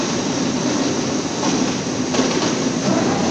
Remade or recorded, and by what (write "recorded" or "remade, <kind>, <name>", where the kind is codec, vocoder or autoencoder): recorded